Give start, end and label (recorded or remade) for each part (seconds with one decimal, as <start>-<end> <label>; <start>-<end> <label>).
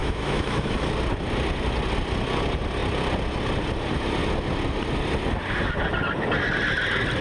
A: 0.0-0.8 remade; 0.8-7.2 recorded